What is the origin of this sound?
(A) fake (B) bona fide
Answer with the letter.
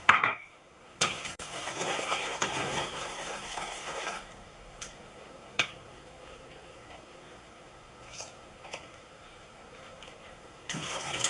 A